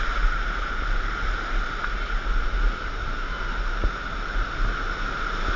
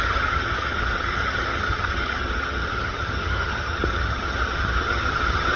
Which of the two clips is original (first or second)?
first